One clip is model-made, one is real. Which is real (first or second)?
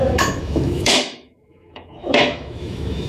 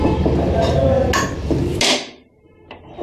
second